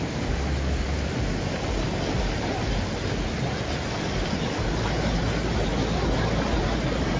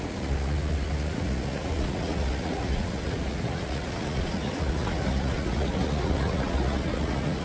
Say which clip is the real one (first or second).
first